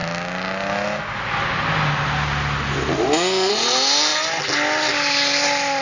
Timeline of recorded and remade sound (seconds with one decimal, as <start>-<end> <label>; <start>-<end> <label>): 0.0-5.8 recorded